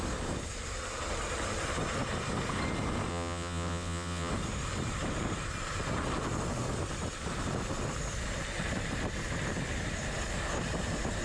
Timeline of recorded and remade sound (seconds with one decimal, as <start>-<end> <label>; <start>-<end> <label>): 0.0-3.1 recorded; 3.1-4.3 remade; 4.3-11.2 recorded